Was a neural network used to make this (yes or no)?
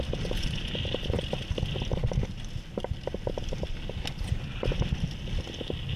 no